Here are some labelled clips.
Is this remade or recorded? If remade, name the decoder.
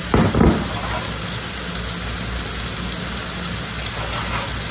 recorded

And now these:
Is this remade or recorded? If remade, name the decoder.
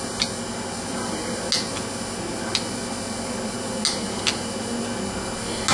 recorded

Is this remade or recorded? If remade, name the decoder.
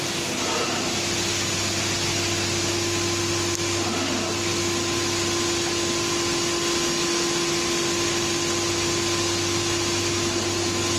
recorded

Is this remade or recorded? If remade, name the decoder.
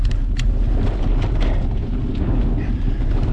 recorded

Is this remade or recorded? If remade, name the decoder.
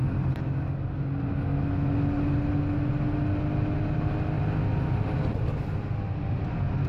recorded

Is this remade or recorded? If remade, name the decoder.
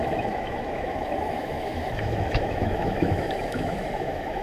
remade, autoencoder, DAC-VAE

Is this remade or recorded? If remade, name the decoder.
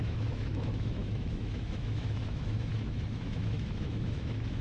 remade, autoencoder, DAC-VAE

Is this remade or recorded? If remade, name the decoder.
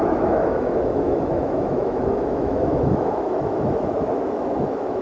remade, autoencoder, DAC-VAE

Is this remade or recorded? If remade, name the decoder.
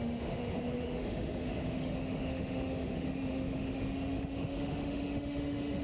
remade, autoencoder, DAC-VAE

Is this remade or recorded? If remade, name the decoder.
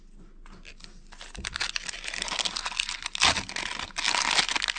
recorded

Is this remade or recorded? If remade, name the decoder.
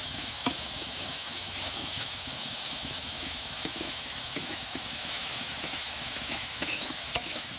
remade, autoencoder, DAC-VAE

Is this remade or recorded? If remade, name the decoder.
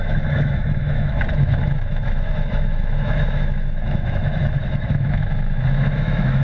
remade, autoencoder, DAC-VAE